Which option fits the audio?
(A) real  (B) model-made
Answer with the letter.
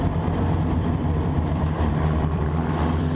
B